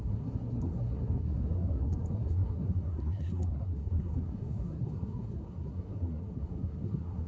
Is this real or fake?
fake